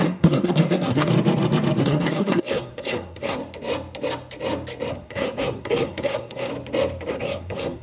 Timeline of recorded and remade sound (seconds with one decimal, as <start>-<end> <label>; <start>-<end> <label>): 0.0-1.1 remade; 1.1-1.8 recorded; 1.8-3.4 remade; 3.4-4.9 recorded; 4.9-6.5 remade; 6.5-7.1 recorded; 7.1-7.8 remade